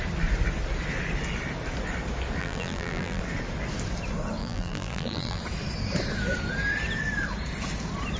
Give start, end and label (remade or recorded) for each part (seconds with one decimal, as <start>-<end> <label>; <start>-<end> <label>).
0.0-2.4 recorded; 2.4-3.2 remade; 3.2-4.4 recorded; 4.4-5.4 remade; 5.4-8.2 recorded